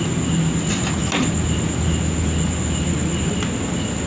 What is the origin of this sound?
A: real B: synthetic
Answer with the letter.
A